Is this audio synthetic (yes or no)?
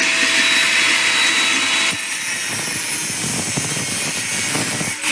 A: no